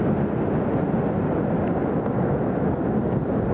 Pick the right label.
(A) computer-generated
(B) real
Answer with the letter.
B